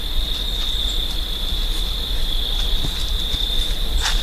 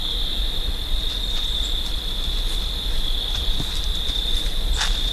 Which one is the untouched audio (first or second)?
first